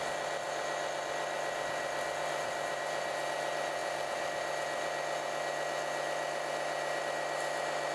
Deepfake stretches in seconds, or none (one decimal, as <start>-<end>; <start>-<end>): none

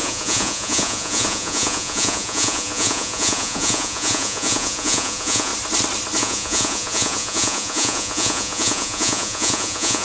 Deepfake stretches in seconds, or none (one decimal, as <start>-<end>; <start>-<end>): 0.0-5.5; 6.2-10.0

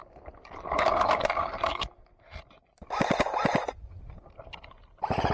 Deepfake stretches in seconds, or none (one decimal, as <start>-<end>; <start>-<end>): none

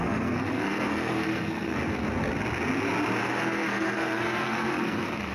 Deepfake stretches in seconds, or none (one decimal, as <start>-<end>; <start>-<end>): 0.0-1.8; 3.2-5.3

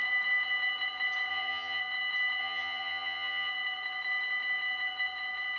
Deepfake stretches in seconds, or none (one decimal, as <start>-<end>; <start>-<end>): 1.3-1.8; 2.4-3.5

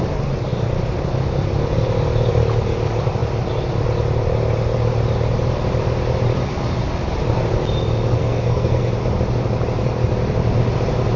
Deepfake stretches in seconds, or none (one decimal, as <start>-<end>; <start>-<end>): 8.1-8.9

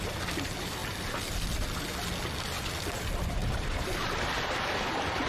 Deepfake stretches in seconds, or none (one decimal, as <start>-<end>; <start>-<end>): 3.4-4.3